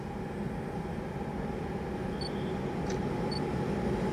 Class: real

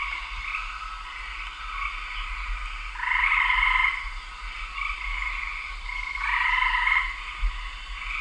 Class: real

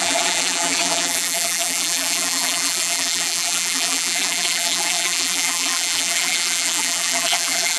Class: fake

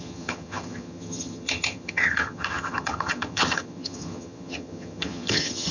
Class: fake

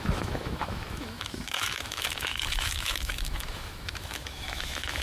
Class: fake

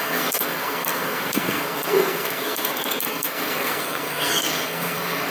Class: fake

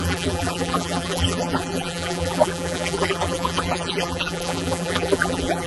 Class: fake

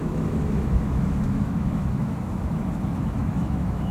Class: fake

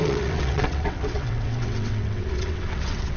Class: fake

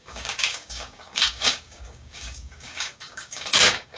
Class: fake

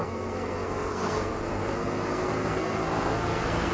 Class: fake